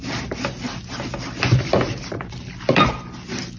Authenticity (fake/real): real